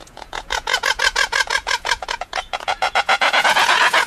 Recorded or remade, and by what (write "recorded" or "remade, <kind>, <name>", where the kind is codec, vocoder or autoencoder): remade, vocoder, Vocos